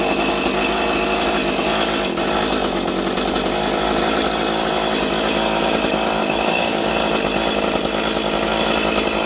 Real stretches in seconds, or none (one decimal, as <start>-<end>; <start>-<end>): 0.0-6.2; 6.9-9.3